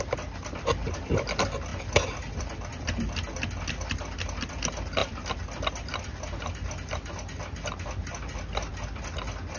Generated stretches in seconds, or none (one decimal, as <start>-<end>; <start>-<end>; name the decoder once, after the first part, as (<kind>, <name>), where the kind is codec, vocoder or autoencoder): none